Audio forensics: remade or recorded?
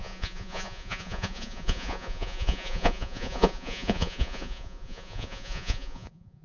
remade